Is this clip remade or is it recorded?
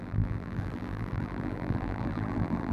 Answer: remade